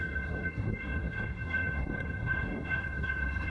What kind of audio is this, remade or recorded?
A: remade